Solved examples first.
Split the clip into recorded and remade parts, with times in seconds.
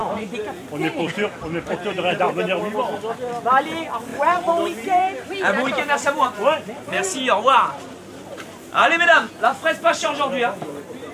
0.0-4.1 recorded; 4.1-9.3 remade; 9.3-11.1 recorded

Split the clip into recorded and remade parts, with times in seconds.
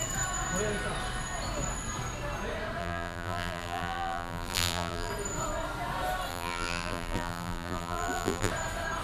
0.0-2.8 recorded; 2.8-5.1 remade; 5.1-6.3 recorded; 6.3-8.5 remade; 8.5-9.0 recorded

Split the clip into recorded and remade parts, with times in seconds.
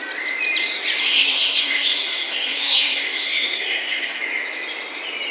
0.0-1.0 recorded; 1.0-4.2 remade; 4.2-5.3 recorded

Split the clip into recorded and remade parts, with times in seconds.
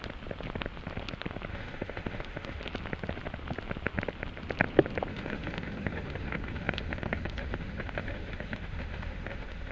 0.0-1.5 recorded; 1.5-2.6 remade; 2.6-5.1 recorded; 5.1-9.7 remade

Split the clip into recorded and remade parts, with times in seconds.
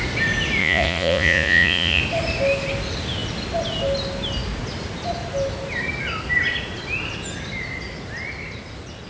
0.0-0.6 recorded; 0.6-2.0 remade; 2.0-9.1 recorded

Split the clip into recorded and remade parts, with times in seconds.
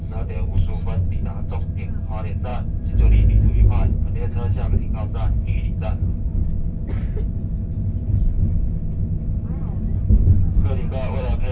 0.0-11.5 recorded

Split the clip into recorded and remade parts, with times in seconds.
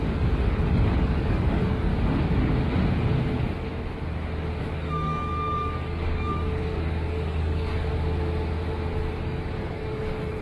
0.0-1.9 remade; 1.9-4.6 recorded; 4.6-7.9 remade; 7.9-8.9 recorded; 8.9-10.4 remade